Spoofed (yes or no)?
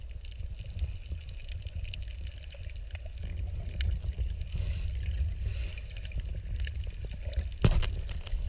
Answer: no